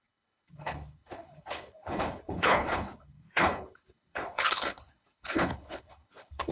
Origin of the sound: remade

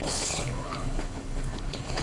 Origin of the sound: remade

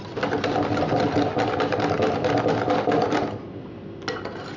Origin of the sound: recorded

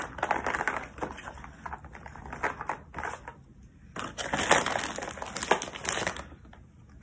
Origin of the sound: recorded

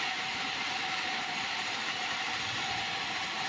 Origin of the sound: remade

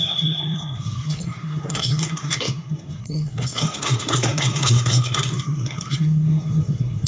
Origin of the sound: remade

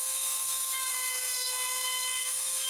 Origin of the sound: remade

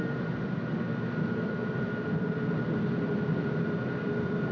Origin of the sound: recorded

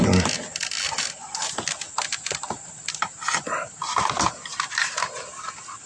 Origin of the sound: recorded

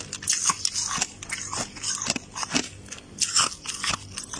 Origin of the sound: recorded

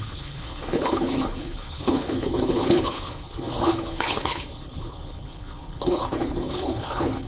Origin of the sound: remade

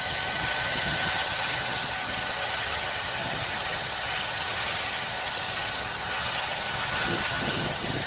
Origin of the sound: remade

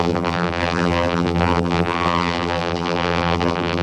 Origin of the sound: remade